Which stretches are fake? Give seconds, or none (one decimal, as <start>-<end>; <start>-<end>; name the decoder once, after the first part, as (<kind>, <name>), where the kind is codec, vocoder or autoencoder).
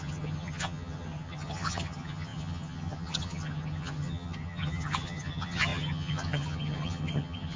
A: 0.0-7.6 (vocoder, HiFi-GAN)